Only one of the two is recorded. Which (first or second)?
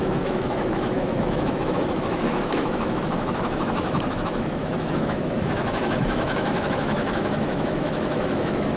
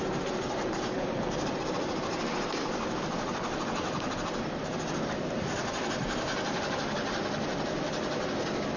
second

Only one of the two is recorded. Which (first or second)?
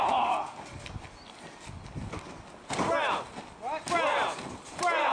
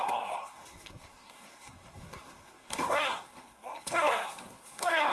first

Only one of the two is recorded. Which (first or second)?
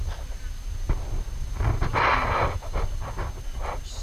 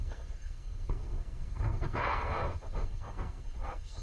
first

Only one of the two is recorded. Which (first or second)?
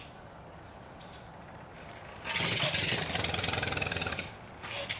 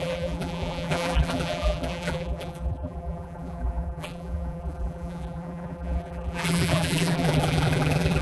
first